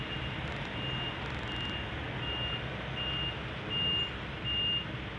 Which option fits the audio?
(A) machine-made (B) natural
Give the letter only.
B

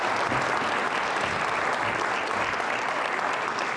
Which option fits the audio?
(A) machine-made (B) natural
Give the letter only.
B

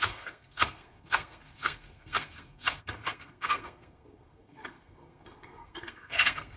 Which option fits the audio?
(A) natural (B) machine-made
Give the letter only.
B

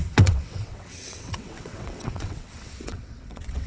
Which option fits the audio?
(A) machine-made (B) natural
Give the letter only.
A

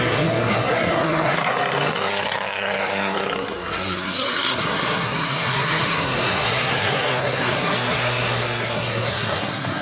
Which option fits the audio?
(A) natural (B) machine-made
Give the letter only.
B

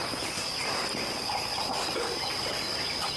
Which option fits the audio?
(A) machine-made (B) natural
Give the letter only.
B